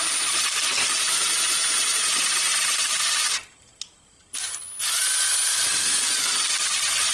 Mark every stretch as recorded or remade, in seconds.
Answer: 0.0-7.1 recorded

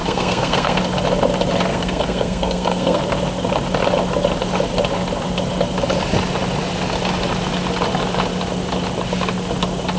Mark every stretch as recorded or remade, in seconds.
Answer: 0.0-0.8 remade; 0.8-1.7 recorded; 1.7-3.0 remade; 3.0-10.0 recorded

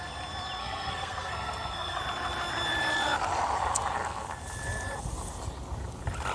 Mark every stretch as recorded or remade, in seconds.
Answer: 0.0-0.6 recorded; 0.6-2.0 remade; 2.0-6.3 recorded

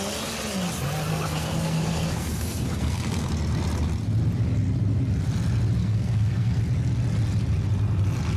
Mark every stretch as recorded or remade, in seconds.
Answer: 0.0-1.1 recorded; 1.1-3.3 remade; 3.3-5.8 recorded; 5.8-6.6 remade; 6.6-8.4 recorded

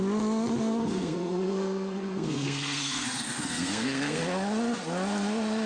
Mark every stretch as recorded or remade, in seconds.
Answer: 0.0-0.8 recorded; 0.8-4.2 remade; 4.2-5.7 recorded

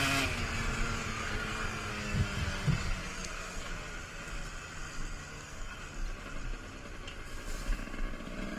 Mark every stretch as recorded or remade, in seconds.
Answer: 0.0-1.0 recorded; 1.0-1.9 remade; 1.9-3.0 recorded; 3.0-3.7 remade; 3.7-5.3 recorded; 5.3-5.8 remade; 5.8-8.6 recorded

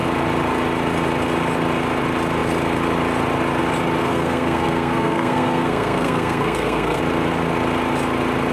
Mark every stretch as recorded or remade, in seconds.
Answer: 0.0-4.0 recorded; 4.0-7.0 remade; 7.0-8.5 recorded

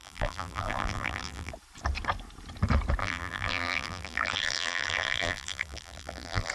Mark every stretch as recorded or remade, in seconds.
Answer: 0.0-1.5 remade; 1.5-3.0 recorded; 3.0-6.5 remade